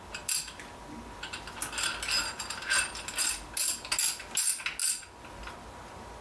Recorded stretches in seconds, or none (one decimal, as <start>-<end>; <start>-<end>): 0.0-6.2